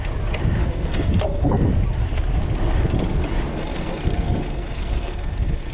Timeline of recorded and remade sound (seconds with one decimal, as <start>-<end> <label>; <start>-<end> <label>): 0.0-0.6 recorded; 0.6-1.7 remade; 1.7-3.5 recorded; 3.5-5.7 remade

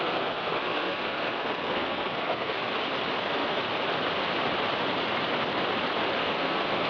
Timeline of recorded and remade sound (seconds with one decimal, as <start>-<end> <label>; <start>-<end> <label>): 0.0-2.6 remade; 2.6-3.2 recorded; 3.2-3.6 remade; 3.6-6.2 recorded; 6.2-6.9 remade

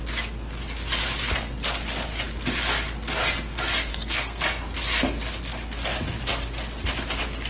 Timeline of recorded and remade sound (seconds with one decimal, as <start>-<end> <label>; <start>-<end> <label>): 0.0-3.9 recorded; 3.9-4.4 remade; 4.4-7.5 recorded

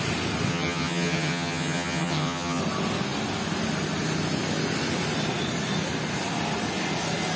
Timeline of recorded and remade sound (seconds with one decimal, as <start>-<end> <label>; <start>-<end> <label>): 0.0-0.5 recorded; 0.5-2.6 remade; 2.6-7.4 recorded

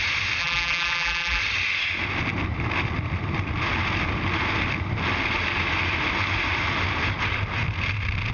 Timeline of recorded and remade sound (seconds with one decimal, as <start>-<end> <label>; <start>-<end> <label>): 0.0-0.4 recorded; 0.4-1.4 remade; 1.4-8.3 recorded

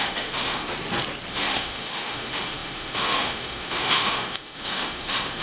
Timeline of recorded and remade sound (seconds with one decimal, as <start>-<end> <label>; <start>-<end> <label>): 0.0-0.6 remade; 0.6-1.3 recorded; 1.3-5.4 remade

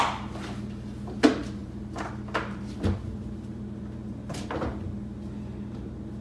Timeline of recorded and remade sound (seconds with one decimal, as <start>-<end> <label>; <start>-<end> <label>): 0.0-6.2 recorded

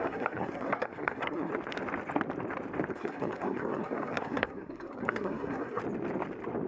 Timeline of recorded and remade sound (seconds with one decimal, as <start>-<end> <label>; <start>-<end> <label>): 0.0-1.5 remade; 1.5-2.9 recorded; 2.9-5.8 remade; 5.8-6.7 recorded